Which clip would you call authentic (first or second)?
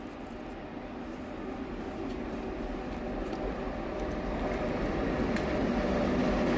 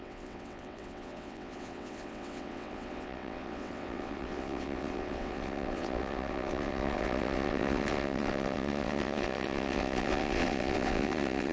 first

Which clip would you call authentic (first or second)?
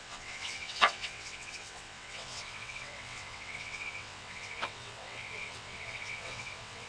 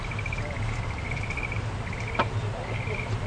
second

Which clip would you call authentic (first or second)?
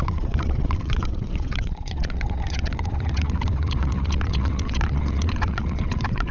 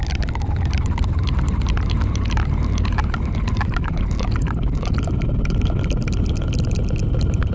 second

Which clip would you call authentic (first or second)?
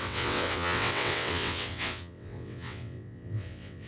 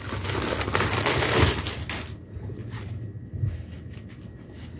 second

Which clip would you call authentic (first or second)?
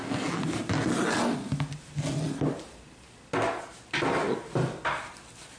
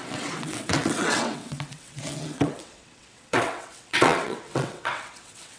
first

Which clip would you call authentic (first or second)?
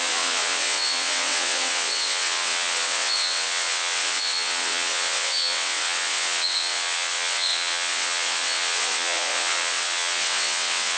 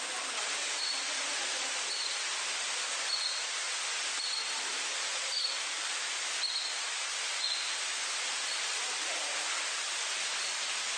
second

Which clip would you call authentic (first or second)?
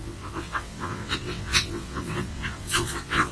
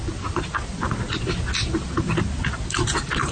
second